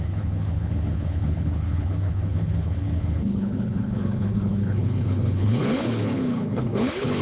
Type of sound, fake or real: fake